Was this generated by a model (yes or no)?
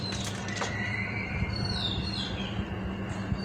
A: yes